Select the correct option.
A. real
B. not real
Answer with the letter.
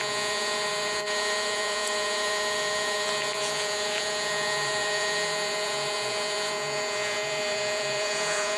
B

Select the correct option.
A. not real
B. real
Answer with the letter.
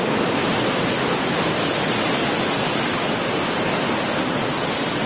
B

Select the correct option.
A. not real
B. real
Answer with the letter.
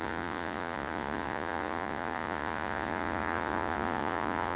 A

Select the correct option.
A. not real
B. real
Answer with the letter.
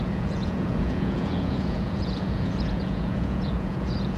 A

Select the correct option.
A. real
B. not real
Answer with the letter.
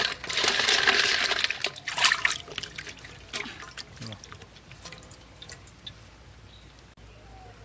A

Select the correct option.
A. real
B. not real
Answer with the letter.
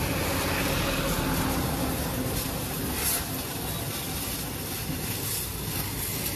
A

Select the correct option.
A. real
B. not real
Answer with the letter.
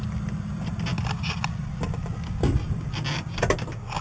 A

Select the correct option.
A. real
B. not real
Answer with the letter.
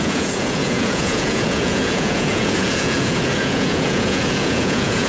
B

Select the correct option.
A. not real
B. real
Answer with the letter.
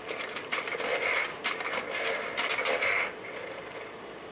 B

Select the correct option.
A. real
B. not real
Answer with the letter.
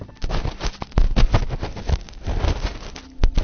A